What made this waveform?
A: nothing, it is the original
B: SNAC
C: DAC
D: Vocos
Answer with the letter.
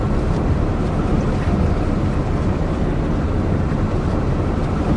A